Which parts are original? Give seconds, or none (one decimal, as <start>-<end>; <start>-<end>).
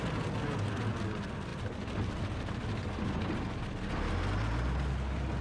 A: 0.0-1.5; 4.1-5.4